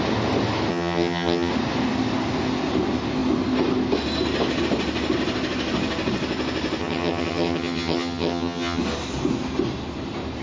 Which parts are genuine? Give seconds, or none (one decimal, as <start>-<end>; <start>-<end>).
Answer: 0.0-0.7; 1.5-6.8; 8.8-10.4